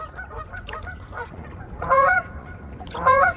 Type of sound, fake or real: fake